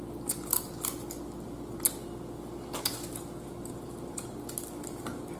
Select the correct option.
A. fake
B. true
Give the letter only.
B